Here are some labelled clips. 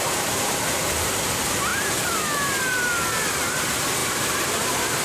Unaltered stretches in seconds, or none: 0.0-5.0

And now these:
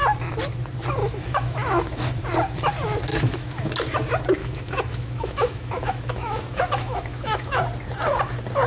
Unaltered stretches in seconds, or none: 0.0-1.0; 2.1-3.1; 3.7-4.4; 7.6-8.7

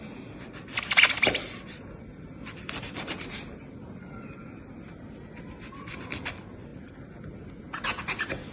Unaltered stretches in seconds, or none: 0.0-8.5

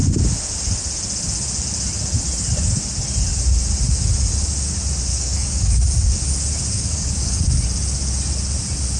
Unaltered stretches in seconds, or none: 0.0-5.1; 5.8-6.7; 7.4-9.0

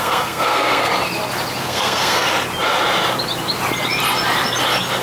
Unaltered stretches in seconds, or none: 0.9-1.6; 2.3-5.0

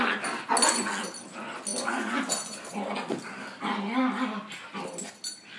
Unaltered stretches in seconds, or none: 0.0-5.6

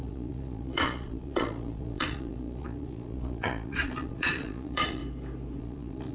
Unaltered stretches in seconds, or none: 5.0-5.6

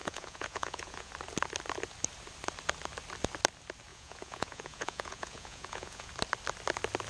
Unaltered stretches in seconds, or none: 1.1-3.9; 6.1-7.1